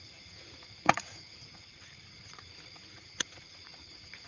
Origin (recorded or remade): remade